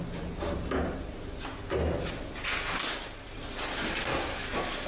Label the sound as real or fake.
real